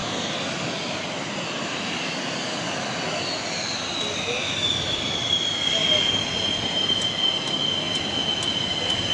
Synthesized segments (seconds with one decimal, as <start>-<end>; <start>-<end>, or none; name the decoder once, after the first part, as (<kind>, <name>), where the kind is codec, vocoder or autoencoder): none